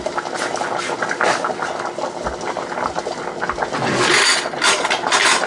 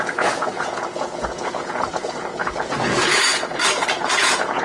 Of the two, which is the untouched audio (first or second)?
first